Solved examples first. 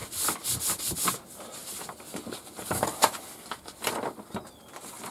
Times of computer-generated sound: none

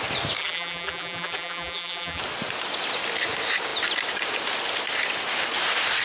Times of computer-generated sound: 0.4-2.2 (vocoder, BigVGAN v2)

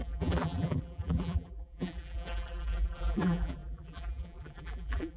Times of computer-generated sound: 0.0-5.2 (vocoder, BigVGAN v2)

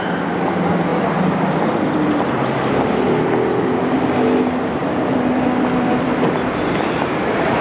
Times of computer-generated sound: 0.9-3.0 (vocoder, BigVGAN v2); 4.8-6.6

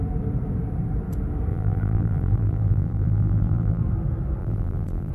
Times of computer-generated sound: 1.5-3.8 (vocoder, BigVGAN v2); 4.4-5.1

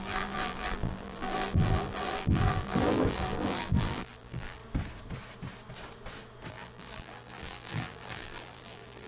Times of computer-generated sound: 0.0-4.6 (vocoder, BigVGAN v2); 6.5-9.1